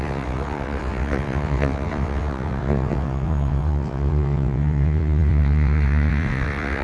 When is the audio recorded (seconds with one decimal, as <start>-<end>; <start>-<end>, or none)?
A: none